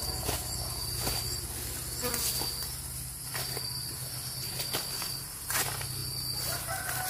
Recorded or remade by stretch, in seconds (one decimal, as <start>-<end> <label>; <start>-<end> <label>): 0.0-7.1 recorded